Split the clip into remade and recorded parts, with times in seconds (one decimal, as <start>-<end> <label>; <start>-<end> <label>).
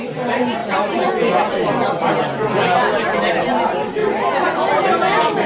0.0-5.5 recorded